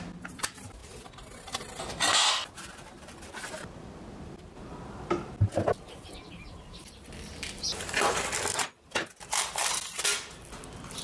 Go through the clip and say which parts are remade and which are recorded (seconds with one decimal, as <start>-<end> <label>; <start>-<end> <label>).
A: 0.0-0.8 remade; 0.8-2.3 recorded; 2.3-11.0 remade